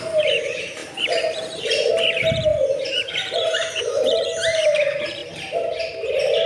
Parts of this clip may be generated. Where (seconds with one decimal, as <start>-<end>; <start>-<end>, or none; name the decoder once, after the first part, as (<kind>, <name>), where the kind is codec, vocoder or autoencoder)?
0.0-6.5 (vocoder, BigVGAN v2)